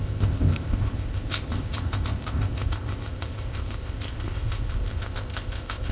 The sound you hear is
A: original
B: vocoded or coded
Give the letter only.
B